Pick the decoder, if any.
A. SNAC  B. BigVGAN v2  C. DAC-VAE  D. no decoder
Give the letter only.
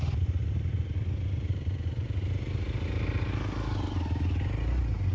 D